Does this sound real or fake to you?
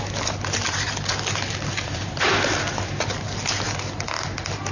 real